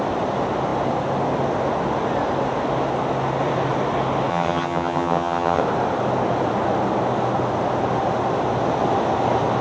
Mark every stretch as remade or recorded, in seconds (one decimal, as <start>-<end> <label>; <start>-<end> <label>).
0.0-4.3 recorded; 4.3-5.6 remade; 5.6-9.6 recorded